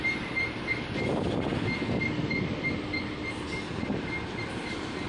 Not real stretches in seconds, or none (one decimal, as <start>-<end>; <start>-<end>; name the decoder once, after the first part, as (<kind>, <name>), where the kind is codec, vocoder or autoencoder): none

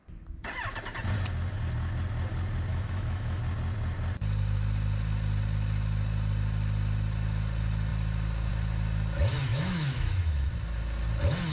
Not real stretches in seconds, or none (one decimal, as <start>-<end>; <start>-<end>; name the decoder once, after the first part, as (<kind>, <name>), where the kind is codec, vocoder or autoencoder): 2.7-3.4 (autoencoder, DAC-VAE); 9.5-10.5

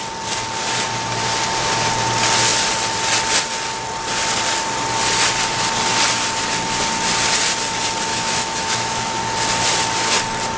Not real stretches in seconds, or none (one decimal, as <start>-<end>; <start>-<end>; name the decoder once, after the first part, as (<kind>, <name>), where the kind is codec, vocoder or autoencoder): 8.1-9.2 (autoencoder, DAC-VAE)